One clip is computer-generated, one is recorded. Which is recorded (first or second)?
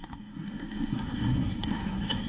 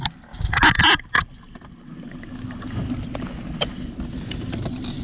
second